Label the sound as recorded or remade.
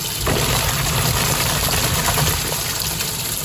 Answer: recorded